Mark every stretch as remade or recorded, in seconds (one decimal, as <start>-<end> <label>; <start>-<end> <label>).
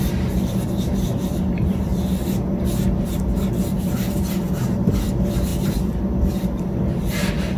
0.0-1.9 remade; 1.9-3.1 recorded; 3.1-7.6 remade